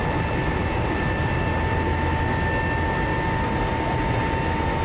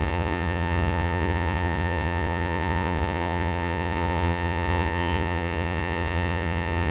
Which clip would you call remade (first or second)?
second